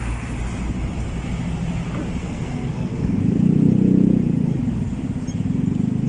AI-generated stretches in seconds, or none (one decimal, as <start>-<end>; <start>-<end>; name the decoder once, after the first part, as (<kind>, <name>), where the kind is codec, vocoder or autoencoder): 2.2-3.2 (codec, SNAC)